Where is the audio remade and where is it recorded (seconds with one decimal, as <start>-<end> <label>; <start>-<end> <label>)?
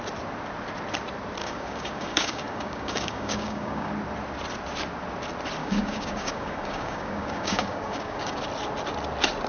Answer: 0.0-1.4 recorded; 1.4-3.9 remade; 3.9-5.6 recorded; 5.6-8.4 remade; 8.4-9.5 recorded